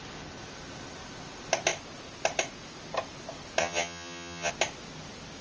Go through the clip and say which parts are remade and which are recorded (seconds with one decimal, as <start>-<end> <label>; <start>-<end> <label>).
0.0-3.6 recorded; 3.6-4.5 remade; 4.5-5.4 recorded